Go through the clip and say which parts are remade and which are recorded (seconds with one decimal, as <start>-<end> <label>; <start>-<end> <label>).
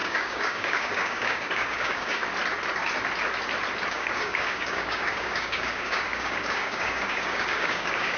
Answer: 0.0-2.2 remade; 2.2-3.9 recorded; 3.9-8.2 remade